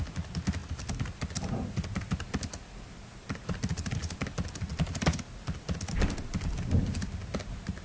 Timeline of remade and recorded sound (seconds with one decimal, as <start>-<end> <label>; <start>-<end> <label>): 0.0-7.8 recorded